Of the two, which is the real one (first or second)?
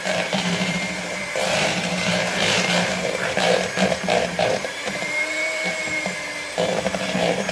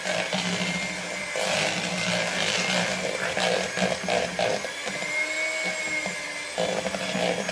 second